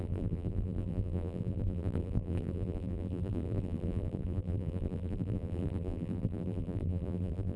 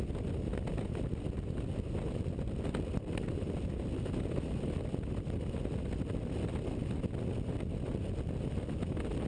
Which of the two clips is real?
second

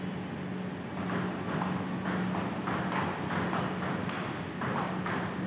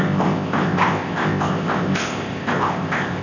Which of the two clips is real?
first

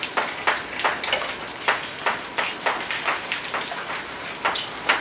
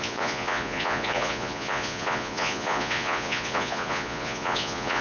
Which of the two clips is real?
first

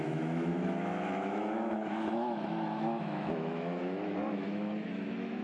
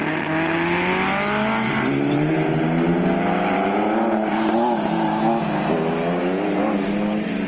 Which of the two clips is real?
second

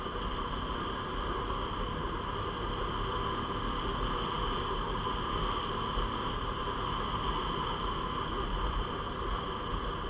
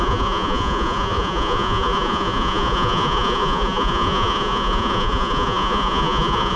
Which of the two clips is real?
first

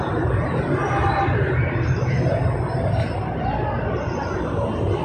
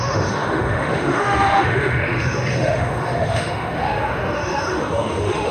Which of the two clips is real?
first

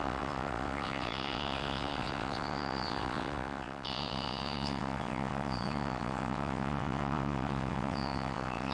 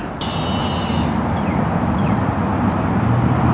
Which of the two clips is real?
second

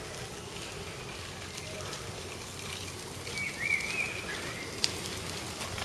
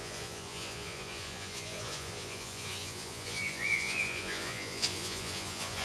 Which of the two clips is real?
first